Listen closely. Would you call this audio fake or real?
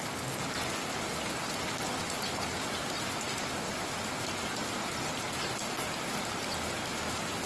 real